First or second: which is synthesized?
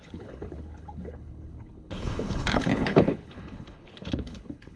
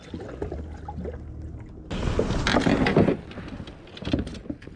first